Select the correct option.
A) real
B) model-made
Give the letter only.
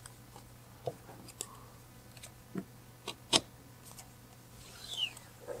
A